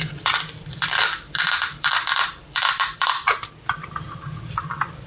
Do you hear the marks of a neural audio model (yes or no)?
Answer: yes